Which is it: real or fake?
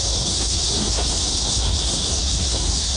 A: fake